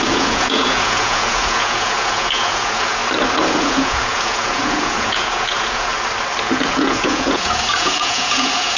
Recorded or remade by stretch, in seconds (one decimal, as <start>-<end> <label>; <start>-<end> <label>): 0.0-3.0 remade; 3.0-3.5 recorded; 3.5-5.9 remade; 5.9-6.4 recorded; 6.4-8.8 remade